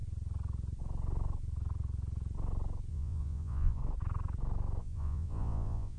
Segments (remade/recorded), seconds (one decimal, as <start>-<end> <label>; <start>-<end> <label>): 0.0-2.9 recorded; 2.9-3.8 remade; 3.8-4.8 recorded; 4.8-6.0 remade

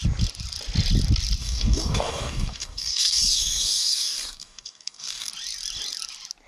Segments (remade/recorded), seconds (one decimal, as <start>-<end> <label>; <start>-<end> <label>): 0.0-1.4 recorded; 1.4-5.3 remade; 5.3-6.5 recorded

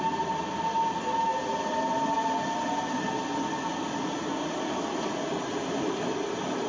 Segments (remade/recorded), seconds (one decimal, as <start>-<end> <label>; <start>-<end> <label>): 0.0-6.7 recorded